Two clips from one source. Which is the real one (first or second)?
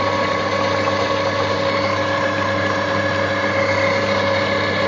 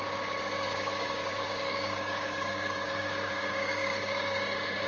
first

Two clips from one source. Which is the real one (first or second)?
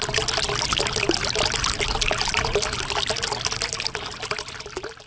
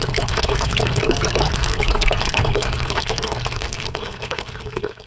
first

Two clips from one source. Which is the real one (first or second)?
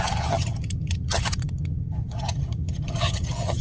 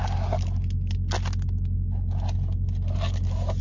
second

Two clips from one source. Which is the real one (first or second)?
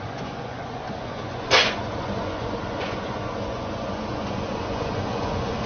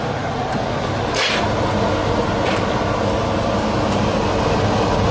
second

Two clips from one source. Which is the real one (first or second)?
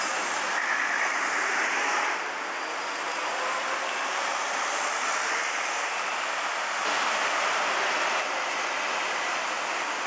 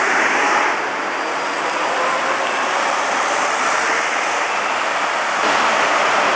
first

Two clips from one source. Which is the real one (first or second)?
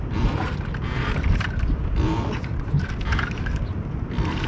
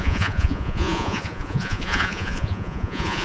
first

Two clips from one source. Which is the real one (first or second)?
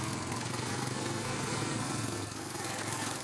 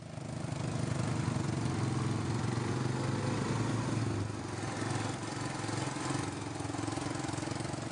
second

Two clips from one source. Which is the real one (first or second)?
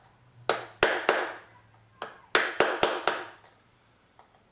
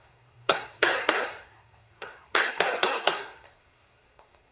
first